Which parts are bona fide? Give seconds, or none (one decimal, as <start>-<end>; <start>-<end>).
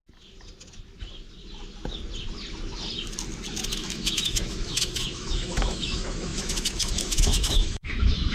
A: 0.0-3.7